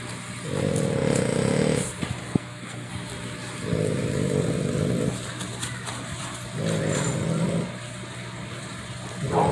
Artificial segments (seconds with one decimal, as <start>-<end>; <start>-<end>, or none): 2.2-2.9